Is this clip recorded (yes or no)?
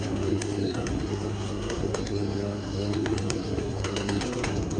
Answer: no